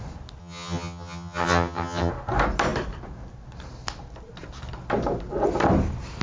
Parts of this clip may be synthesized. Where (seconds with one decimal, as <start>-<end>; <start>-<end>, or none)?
0.4-2.1